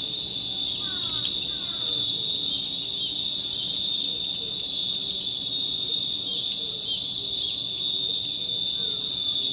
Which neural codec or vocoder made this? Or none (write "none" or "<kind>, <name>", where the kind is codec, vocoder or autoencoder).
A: none